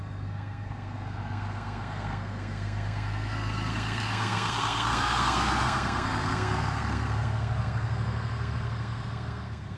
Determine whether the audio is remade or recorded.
remade